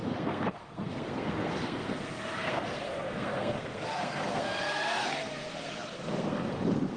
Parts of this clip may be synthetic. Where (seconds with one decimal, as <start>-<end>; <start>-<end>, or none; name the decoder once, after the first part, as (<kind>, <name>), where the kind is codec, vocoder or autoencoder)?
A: 0.0-7.0 (codec, SNAC)